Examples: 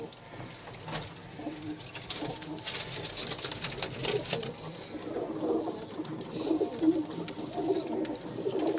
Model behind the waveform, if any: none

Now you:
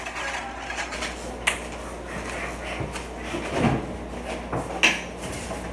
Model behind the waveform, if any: none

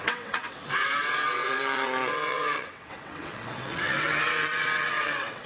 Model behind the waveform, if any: vocoder, WaveNeXt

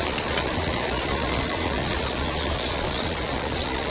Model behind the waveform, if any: vocoder, Vocos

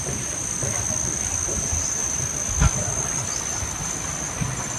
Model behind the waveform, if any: none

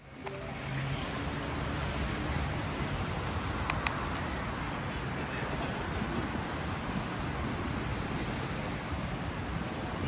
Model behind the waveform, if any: none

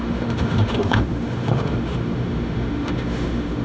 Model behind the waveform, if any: autoencoder, DAC-VAE